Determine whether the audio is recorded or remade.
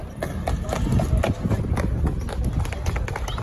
recorded